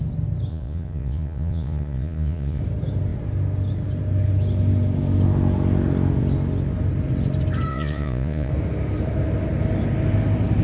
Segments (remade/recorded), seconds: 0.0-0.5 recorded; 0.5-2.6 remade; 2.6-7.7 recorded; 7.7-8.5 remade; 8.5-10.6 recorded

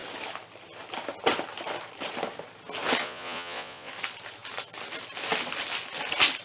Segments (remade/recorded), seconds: 0.0-3.0 recorded; 3.0-3.9 remade; 3.9-6.4 recorded

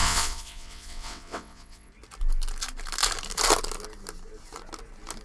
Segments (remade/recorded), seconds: 0.0-1.9 remade; 1.9-5.2 recorded

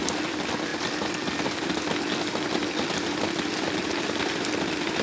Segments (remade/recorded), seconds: 0.0-5.0 recorded